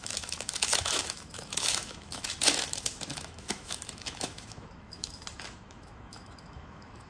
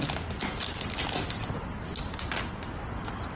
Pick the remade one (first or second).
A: first